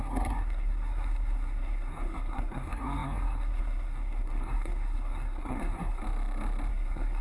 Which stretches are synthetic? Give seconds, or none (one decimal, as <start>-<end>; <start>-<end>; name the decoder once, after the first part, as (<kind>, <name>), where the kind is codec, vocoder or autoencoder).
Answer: 0.0-6.0 (codec, SNAC); 6.7-7.2